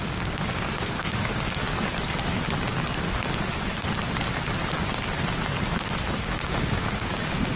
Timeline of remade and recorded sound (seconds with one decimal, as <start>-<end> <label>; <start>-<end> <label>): 0.0-1.6 remade; 1.6-6.2 recorded; 6.2-7.6 remade